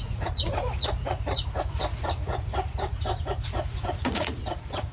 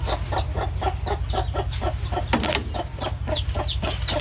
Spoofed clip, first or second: first